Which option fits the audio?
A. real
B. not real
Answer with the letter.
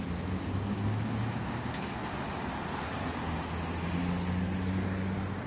A